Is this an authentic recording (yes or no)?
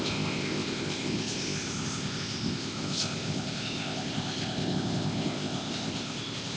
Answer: no